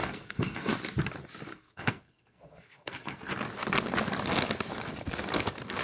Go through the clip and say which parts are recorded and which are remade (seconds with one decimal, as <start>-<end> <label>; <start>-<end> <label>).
0.0-0.7 remade; 0.7-1.5 recorded; 1.5-3.3 remade; 3.3-5.8 recorded